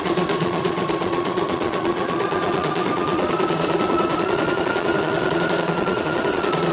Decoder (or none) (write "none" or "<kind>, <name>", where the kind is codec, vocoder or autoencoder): vocoder, Vocos